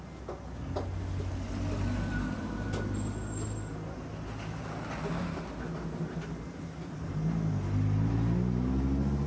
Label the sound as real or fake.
real